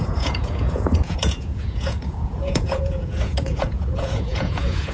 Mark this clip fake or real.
fake